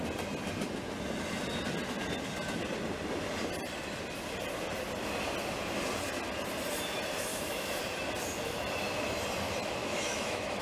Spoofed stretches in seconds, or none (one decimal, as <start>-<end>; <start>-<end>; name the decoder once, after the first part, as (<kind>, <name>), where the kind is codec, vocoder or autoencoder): 7.3-7.8 (autoencoder, DAC-VAE); 9.8-10.6